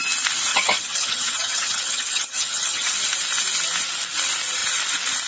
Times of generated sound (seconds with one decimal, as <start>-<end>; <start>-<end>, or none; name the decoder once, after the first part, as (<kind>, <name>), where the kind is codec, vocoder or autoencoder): 0.5-2.9 (vocoder, HiFi-GAN)